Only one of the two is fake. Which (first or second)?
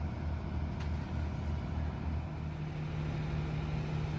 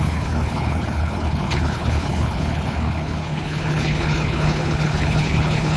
second